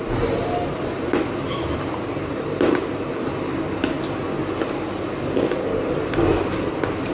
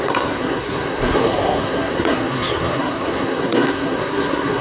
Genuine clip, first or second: first